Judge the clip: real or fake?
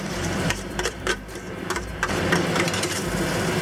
fake